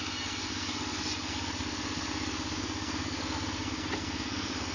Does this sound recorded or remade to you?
remade